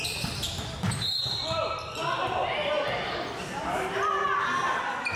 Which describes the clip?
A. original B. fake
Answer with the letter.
A